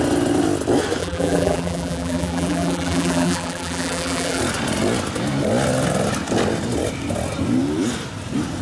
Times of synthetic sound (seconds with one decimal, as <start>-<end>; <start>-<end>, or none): 1.0-4.4